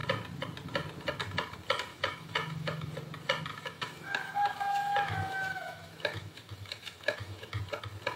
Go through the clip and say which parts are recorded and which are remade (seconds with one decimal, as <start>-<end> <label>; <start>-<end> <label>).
0.0-1.9 recorded; 1.9-2.9 remade; 2.9-3.5 recorded; 3.5-7.6 remade; 7.6-8.2 recorded